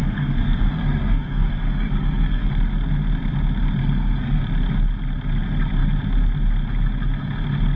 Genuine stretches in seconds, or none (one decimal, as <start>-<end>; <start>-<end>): 2.5-3.8; 4.4-7.8